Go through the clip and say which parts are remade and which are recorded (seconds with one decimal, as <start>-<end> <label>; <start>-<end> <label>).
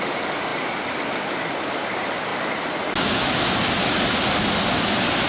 0.0-5.3 recorded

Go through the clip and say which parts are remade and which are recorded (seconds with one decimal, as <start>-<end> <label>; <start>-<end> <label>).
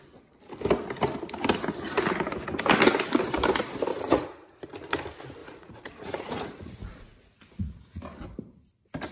0.0-3.9 recorded; 3.9-4.6 remade; 4.6-5.4 recorded; 5.4-8.0 remade; 8.0-9.1 recorded